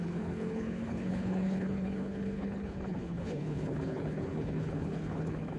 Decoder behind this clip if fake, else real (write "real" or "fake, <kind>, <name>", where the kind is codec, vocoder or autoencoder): fake, codec, HILCodec